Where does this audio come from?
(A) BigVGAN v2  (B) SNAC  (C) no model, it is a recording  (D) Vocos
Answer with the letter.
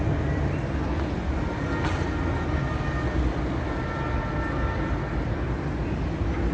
C